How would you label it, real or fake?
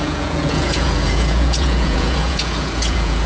fake